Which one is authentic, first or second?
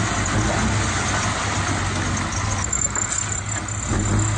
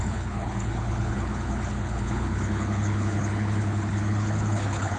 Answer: first